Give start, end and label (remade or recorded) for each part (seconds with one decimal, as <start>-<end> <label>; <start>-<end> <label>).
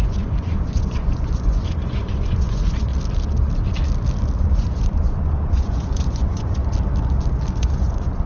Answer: 0.0-2.9 remade; 2.9-4.4 recorded; 4.4-6.6 remade; 6.6-7.5 recorded; 7.5-8.3 remade